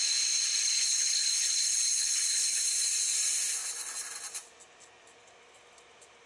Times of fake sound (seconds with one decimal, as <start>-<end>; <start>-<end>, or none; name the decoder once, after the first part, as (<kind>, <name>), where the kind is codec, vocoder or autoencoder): 0.6-2.6 (codec, HILCodec)